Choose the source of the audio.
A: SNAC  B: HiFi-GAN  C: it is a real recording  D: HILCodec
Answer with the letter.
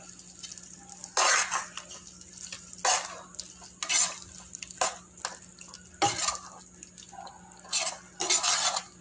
C